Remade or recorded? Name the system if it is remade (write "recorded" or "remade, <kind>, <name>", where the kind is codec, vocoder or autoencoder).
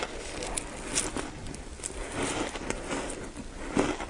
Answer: recorded